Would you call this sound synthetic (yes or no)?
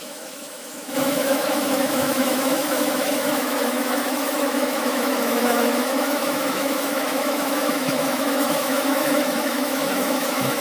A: yes